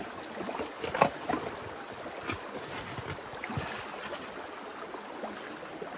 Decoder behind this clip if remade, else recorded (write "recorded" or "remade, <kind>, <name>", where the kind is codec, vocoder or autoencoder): recorded